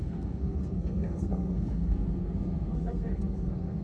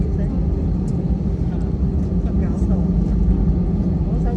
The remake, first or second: first